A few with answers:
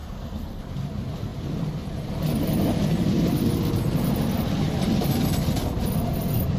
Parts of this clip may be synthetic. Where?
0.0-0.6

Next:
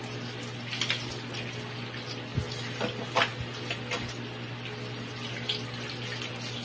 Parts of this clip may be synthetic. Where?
none